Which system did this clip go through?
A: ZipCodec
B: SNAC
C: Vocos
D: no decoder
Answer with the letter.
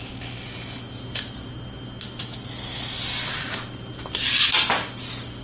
D